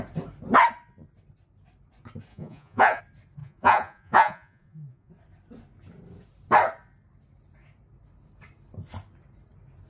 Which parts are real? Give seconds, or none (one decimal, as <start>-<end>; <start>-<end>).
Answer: 0.0-2.3; 3.0-3.4; 5.1-9.9